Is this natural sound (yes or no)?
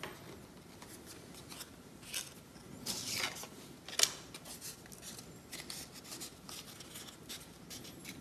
yes